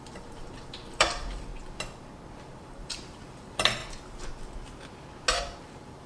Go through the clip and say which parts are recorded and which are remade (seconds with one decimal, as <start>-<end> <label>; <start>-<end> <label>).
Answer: 0.0-1.5 remade; 1.5-2.3 recorded; 2.3-3.8 remade; 3.8-5.6 recorded; 5.6-6.1 remade